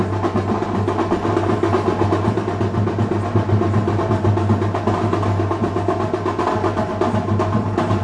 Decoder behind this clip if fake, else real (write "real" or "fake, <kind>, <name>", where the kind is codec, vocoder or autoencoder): real